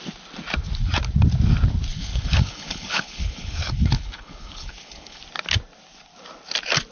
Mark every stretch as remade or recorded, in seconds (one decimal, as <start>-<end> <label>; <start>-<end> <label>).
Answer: 0.0-1.9 recorded; 1.9-5.2 remade; 5.2-6.9 recorded